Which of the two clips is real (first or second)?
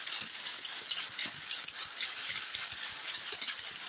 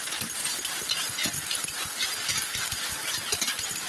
second